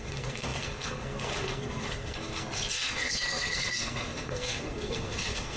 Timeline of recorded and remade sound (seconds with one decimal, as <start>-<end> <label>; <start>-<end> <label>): 0.0-5.6 remade